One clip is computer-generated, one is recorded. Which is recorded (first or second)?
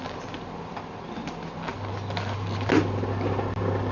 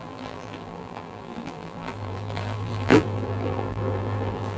first